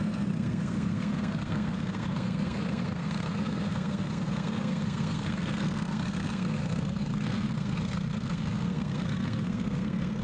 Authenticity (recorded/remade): remade